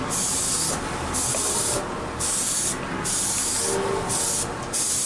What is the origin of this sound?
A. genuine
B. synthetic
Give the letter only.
A